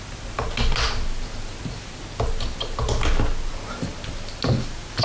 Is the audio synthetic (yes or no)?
no